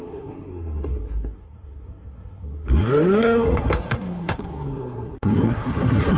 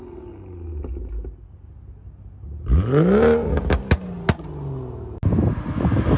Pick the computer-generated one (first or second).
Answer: first